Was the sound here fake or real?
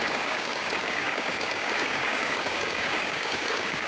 fake